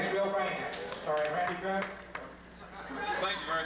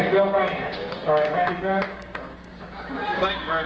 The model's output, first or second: second